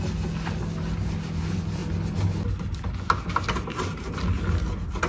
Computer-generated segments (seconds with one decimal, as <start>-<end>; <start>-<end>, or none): none

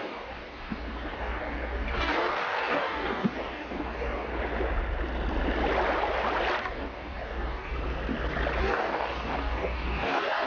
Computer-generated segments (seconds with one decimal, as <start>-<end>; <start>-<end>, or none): 0.0-4.3; 6.6-7.7; 8.6-10.5